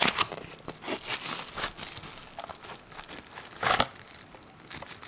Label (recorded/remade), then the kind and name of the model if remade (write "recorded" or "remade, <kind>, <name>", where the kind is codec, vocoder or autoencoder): recorded